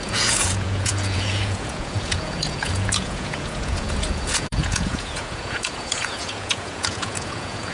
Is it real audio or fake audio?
fake